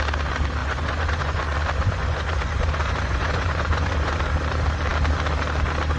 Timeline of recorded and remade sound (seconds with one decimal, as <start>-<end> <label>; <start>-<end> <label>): 0.0-0.6 recorded; 0.6-4.2 remade; 4.2-6.0 recorded